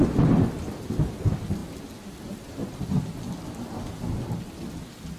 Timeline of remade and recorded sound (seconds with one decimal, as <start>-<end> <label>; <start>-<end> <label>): 0.0-5.2 recorded